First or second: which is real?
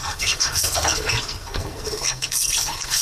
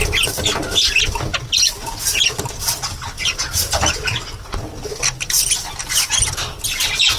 second